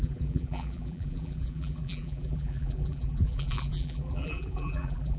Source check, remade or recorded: remade